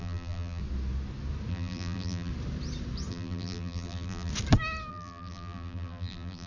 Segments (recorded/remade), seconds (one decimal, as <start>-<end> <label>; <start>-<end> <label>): 0.0-0.6 remade; 0.6-1.5 recorded; 1.5-2.3 remade; 2.3-3.1 recorded; 3.1-4.3 remade; 4.3-4.9 recorded; 4.9-6.5 remade